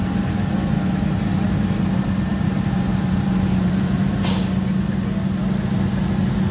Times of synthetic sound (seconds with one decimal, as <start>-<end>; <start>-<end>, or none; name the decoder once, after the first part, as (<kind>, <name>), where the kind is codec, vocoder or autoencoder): 2.3-4.2 (vocoder, BigVGAN v2)